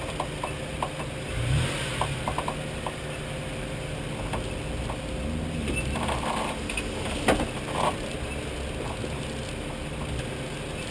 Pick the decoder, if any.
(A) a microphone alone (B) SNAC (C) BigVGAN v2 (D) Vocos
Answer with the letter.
A